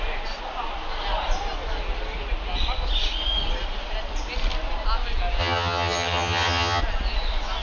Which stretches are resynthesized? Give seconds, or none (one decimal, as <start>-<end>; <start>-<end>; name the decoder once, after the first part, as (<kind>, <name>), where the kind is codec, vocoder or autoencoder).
5.4-6.8 (vocoder, HiFi-GAN)